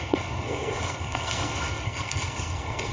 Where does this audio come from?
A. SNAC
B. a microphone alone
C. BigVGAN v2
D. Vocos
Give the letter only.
A